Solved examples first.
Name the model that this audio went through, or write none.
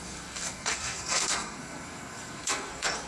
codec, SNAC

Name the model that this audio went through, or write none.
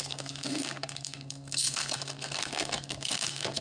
codec, SNAC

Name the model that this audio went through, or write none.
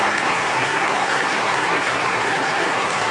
codec, SNAC